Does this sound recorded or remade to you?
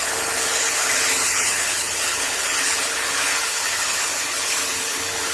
remade